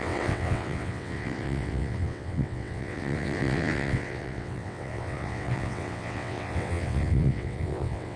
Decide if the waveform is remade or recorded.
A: remade